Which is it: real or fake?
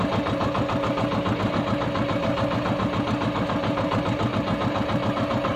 real